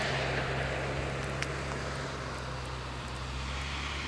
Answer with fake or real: real